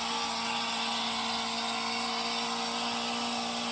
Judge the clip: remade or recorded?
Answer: recorded